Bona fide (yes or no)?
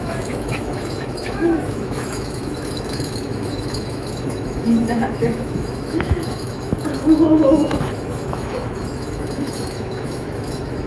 no